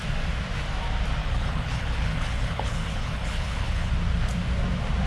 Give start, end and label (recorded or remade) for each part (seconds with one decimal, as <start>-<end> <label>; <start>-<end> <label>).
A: 0.0-1.2 recorded; 1.2-3.9 remade; 3.9-5.1 recorded